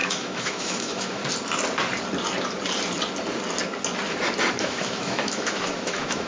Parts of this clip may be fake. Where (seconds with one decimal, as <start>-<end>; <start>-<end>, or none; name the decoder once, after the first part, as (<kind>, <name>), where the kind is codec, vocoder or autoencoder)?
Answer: 0.0-1.2 (autoencoder, DAC-VAE); 4.6-6.3